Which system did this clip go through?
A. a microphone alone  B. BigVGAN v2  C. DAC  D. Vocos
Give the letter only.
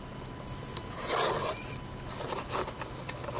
A